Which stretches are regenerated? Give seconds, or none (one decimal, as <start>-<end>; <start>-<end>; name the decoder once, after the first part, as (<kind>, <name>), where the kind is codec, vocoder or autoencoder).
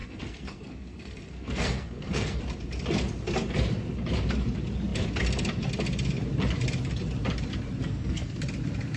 0.0-2.4 (codec, SNAC); 7.8-8.4